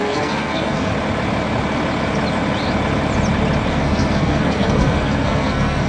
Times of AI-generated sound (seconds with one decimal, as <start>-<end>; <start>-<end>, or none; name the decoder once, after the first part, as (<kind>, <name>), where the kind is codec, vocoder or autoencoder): 0.0-0.9 (codec, SNAC); 3.7-5.9